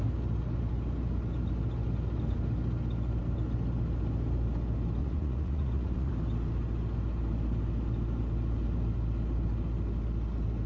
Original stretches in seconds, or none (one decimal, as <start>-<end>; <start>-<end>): 0.0-5.0; 6.1-10.7